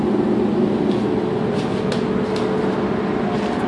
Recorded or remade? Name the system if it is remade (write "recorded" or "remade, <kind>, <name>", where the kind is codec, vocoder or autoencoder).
recorded